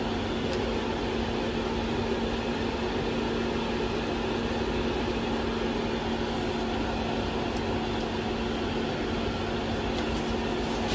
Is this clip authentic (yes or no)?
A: yes